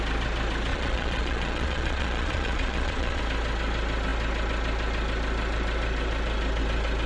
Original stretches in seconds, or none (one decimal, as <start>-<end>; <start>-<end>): 0.0-0.7; 3.2-7.1